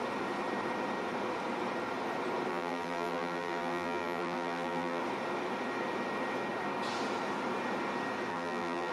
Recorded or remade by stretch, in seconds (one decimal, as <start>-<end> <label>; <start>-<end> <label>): 0.0-2.5 recorded; 2.5-5.0 remade; 5.0-8.3 recorded; 8.3-8.9 remade